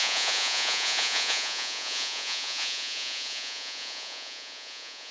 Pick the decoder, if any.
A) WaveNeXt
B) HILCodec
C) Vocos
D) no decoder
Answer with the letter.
C